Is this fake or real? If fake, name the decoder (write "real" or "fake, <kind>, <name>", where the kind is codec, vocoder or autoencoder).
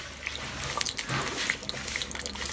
real